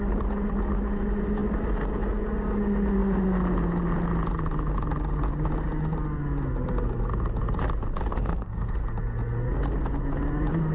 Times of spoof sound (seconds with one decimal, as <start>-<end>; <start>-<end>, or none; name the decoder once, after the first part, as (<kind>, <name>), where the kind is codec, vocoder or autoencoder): 8.1-8.8 (codec, SNAC)